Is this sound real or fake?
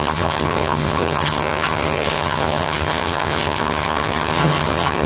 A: fake